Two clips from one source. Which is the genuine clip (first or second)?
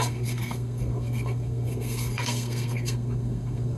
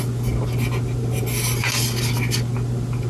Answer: second